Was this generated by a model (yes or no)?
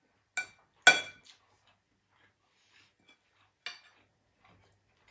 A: no